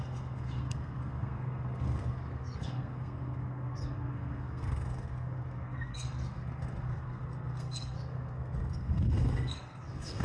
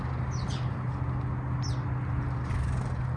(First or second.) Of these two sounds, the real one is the second